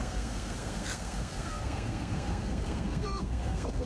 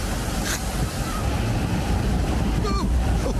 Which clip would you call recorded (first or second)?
second